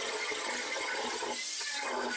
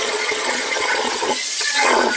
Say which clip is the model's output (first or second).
second